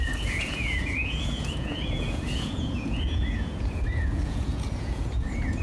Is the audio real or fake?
fake